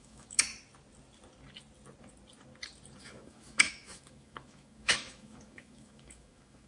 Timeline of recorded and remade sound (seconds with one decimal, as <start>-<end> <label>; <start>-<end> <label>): 0.0-0.5 remade; 0.5-3.0 recorded; 3.0-6.7 remade